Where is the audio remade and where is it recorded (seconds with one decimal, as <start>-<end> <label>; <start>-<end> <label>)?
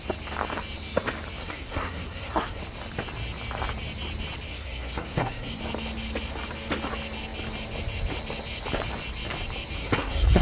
0.0-1.4 recorded; 1.4-2.6 remade; 2.6-4.5 recorded; 4.5-5.6 remade; 5.6-9.8 recorded; 9.8-10.4 remade